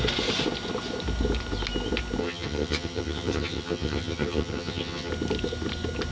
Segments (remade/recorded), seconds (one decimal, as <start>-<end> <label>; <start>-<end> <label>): 0.0-2.2 recorded; 2.2-5.1 remade; 5.1-6.1 recorded